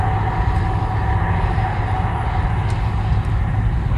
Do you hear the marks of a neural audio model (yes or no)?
no